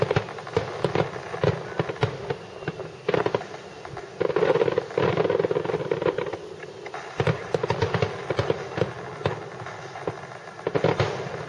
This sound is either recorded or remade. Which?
recorded